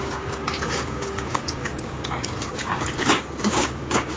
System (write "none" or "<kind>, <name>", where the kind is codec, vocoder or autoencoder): codec, DAC